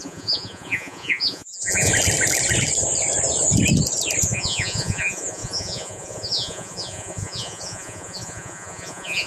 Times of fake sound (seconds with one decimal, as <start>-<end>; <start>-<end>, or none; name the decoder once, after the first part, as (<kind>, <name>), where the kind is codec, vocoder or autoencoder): 0.0-1.9 (vocoder, Vocos); 4.2-9.3